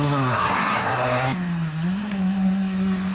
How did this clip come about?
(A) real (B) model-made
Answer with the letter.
B